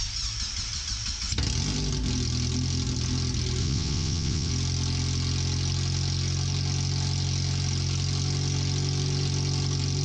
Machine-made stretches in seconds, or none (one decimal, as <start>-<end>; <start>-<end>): 3.6-4.5